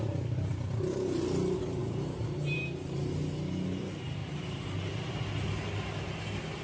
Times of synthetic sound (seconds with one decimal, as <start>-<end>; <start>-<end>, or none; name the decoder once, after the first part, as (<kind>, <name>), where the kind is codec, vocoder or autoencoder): 1.8-3.1 (vocoder, BigVGAN v2); 4.2-5.1